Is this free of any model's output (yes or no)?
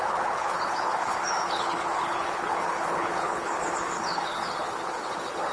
no